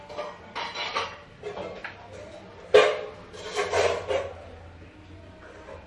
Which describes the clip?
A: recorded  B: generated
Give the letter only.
A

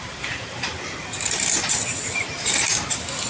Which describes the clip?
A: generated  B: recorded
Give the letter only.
A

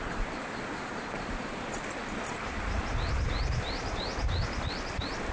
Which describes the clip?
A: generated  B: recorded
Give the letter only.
B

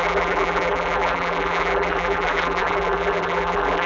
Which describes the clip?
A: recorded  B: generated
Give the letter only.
B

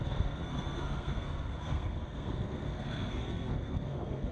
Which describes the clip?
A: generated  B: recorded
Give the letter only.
A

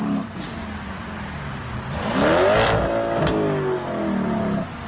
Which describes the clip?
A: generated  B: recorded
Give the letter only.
B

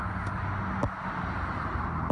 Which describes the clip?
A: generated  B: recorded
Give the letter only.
B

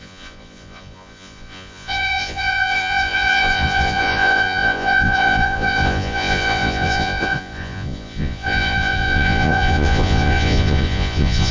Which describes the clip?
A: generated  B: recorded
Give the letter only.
A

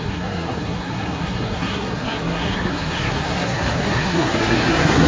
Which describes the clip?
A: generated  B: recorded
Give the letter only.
A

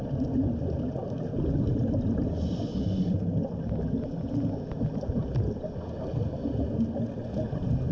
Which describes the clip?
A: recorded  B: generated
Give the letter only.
A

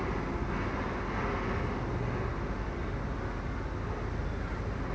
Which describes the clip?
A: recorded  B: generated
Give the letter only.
A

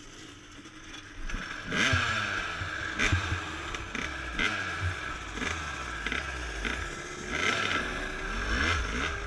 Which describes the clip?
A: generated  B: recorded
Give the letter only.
B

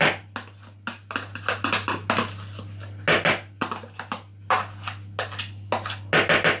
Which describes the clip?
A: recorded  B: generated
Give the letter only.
A